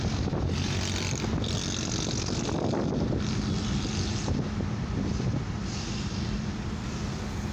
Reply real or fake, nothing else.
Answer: real